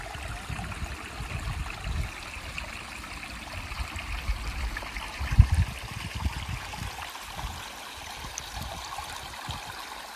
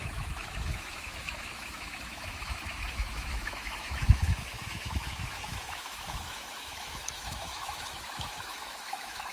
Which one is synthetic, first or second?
second